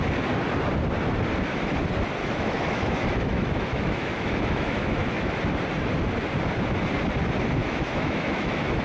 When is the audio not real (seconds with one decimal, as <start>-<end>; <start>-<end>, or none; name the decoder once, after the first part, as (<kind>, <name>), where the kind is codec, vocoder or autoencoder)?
2.2-5.3 (autoencoder, DAC-VAE); 7.6-8.8